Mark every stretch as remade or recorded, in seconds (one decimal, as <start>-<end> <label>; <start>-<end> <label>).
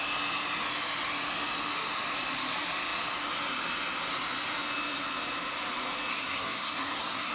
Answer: 0.0-6.1 recorded; 6.1-7.3 remade